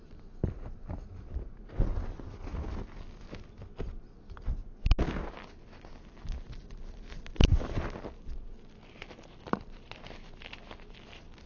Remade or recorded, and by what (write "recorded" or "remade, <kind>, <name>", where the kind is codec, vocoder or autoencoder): recorded